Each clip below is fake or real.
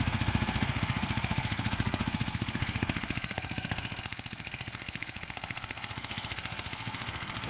fake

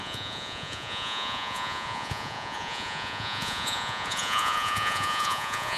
fake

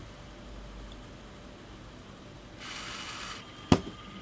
real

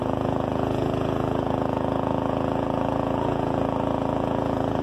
fake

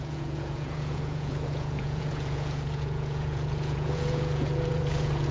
fake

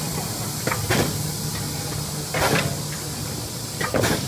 real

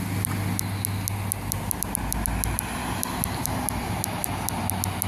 real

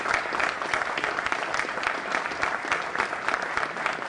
real